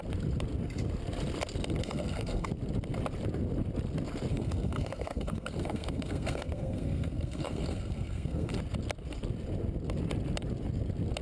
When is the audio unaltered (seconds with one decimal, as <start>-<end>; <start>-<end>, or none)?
0.0-1.8; 2.5-4.3; 8.6-11.2